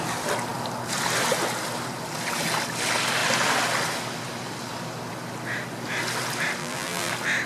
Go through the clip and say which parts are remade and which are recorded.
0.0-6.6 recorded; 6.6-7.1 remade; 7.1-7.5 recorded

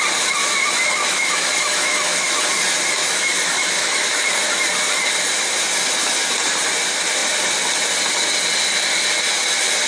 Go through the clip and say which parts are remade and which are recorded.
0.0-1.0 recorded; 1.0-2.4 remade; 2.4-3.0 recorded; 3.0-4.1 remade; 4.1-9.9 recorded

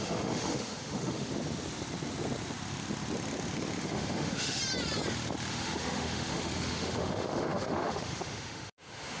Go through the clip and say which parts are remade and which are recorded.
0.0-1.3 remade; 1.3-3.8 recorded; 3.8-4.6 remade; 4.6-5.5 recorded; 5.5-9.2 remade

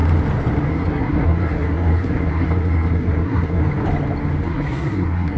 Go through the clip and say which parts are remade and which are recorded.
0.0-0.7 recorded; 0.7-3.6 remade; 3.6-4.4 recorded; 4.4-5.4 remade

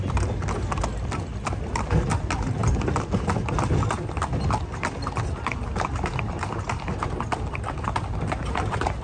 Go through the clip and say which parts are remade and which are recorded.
0.0-9.0 recorded

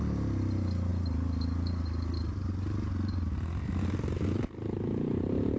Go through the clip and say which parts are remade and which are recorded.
0.0-5.6 recorded

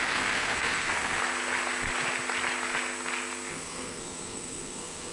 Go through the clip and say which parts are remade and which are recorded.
0.0-1.2 remade; 1.2-3.5 recorded; 3.5-5.1 remade